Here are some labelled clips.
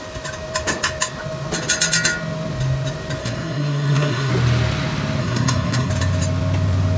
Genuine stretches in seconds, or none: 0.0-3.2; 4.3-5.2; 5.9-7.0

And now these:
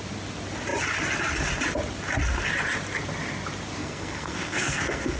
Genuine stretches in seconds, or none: 0.0-3.8

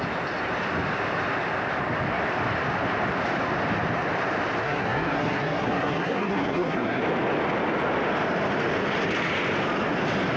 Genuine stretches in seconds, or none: 0.0-4.6; 7.0-10.4

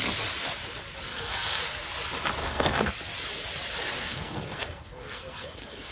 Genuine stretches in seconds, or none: 0.0-1.1; 1.6-2.4; 2.9-4.0

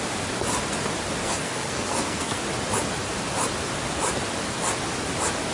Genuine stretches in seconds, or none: 0.0-1.2; 2.4-5.5

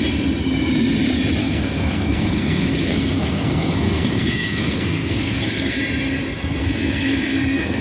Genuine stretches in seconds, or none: 0.0-1.4; 5.8-6.6

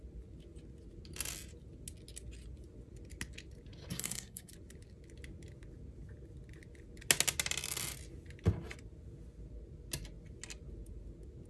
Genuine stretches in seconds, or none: 0.0-3.9; 4.5-11.5